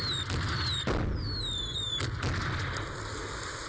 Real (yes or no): yes